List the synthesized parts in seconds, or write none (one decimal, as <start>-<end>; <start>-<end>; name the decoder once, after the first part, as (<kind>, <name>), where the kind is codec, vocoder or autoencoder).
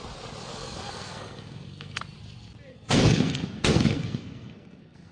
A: 0.5-2.0 (codec, SNAC); 2.7-5.1